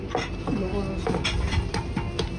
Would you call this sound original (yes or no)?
yes